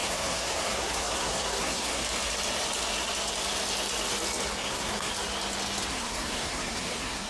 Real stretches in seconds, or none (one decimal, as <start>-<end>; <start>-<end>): 2.0-4.6; 5.1-5.9

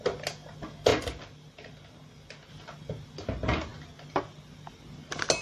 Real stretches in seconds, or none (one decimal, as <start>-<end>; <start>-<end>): 0.0-5.4

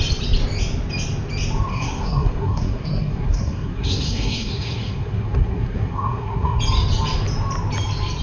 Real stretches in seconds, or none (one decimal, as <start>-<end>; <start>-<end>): 0.0-1.7; 6.6-8.2

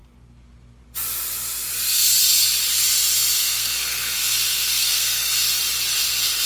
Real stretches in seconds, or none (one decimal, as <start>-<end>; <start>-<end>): 0.0-3.4; 5.3-6.5